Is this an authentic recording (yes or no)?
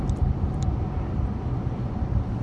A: no